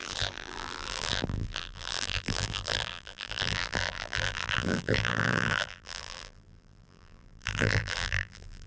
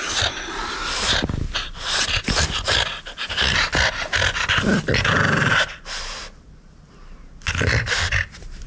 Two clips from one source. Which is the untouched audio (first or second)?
second